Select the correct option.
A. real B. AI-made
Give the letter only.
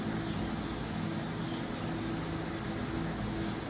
A